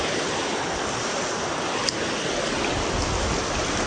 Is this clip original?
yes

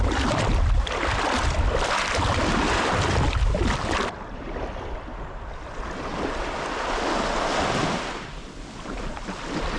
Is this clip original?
yes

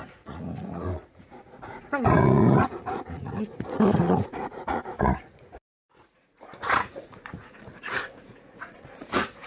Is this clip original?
no